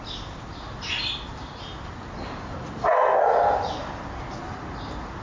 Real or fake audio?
real